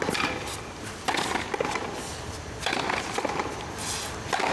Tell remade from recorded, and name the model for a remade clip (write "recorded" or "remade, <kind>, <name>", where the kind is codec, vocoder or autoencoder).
recorded